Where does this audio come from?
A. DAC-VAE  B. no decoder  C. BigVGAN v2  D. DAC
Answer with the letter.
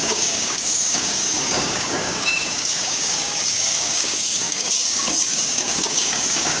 D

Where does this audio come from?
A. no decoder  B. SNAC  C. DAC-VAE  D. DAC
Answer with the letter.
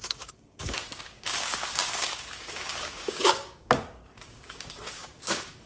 D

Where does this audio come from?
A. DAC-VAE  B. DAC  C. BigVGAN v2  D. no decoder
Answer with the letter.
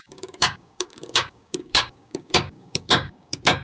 B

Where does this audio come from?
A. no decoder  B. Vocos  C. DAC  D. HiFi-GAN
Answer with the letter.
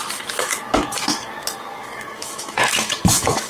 C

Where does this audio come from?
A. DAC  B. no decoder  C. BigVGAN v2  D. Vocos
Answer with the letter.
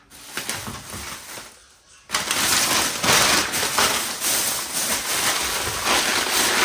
B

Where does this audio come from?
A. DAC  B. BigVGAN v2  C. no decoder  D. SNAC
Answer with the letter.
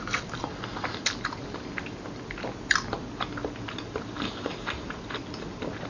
C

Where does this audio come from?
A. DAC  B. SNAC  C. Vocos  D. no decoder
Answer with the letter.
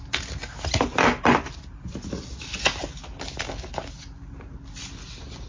D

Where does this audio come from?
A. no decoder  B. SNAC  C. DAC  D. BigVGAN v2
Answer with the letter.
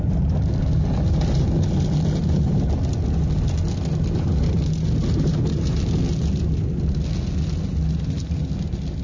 A